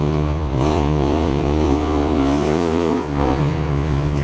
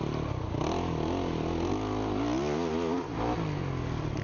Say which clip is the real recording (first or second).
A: second